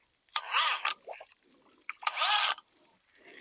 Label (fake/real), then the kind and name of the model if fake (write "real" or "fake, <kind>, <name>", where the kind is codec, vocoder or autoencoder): fake, vocoder, BigVGAN v2